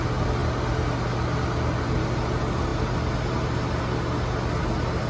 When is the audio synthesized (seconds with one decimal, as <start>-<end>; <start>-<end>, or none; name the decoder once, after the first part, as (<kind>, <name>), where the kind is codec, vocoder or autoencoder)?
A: none